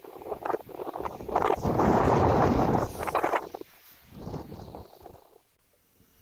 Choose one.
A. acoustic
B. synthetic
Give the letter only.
B